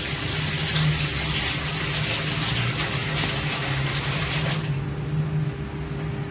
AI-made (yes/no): no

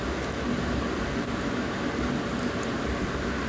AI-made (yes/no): no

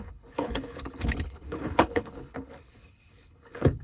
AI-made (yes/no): yes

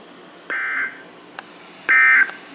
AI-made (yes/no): no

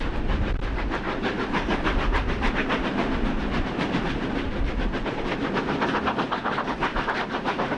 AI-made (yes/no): no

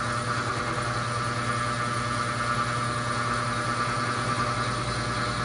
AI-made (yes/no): no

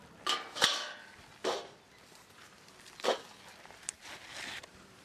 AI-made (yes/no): no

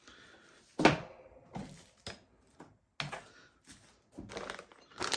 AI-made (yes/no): no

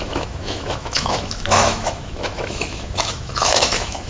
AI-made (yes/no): yes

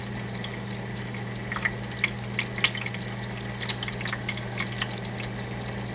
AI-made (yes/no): no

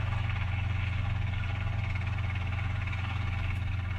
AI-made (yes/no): no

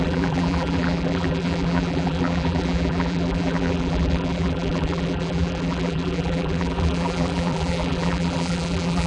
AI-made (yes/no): yes